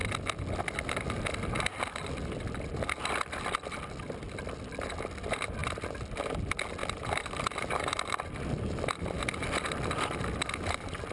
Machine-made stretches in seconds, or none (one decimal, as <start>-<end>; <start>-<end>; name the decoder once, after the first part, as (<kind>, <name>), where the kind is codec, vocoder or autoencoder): 5.6-6.2 (vocoder, BigVGAN v2); 6.8-9.9